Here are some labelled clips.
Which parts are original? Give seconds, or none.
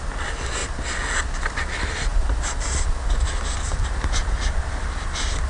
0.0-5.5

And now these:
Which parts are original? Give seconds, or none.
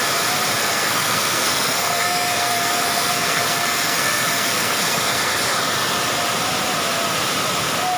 0.0-0.6; 5.4-8.0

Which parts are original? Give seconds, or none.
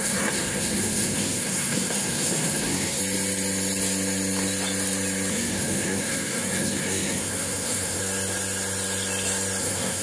3.0-5.3; 8.0-9.6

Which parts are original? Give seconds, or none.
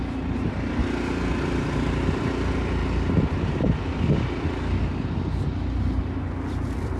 0.0-7.0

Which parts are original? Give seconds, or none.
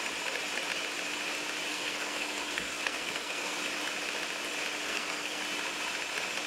0.0-1.7; 3.6-4.8; 5.4-6.5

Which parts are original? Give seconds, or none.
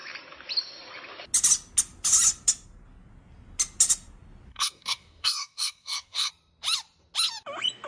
0.0-4.5; 6.3-7.9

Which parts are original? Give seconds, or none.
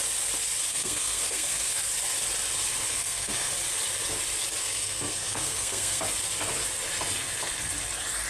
0.0-0.7; 1.8-2.9; 3.5-4.6; 6.0-8.3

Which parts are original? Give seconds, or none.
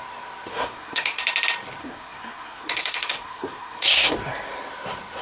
0.0-0.5; 1.2-1.8; 4.1-5.2